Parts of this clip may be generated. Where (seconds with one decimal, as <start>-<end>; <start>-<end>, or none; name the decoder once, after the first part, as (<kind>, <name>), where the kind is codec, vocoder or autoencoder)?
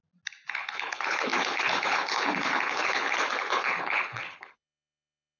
0.5-5.4 (codec, HILCodec)